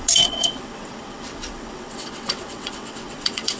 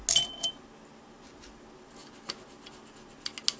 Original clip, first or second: second